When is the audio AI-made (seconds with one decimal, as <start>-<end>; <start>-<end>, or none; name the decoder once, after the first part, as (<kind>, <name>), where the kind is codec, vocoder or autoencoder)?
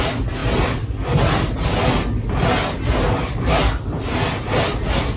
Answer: none